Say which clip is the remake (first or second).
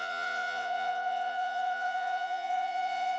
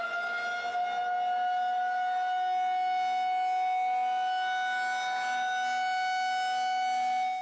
first